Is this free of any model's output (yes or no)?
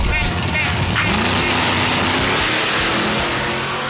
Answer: yes